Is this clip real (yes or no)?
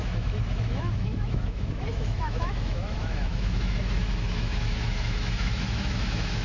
no